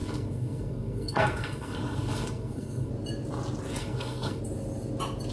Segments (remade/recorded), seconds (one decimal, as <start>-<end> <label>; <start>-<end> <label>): 0.0-2.9 remade; 2.9-3.8 recorded; 3.8-4.4 remade; 4.4-5.3 recorded